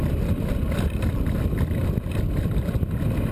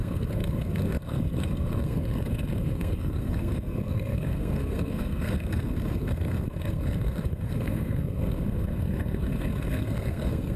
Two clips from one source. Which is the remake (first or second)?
second